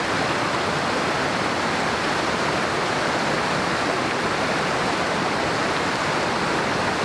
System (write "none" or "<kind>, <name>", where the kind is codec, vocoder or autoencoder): none